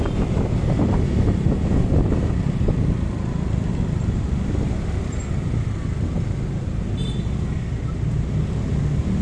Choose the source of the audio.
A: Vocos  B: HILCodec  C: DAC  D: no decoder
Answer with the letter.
D